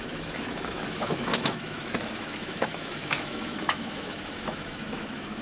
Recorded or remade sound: remade